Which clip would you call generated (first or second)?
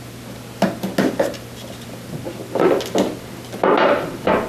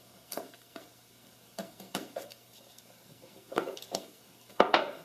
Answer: second